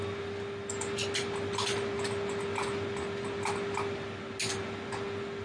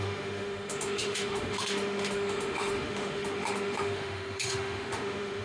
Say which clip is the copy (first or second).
second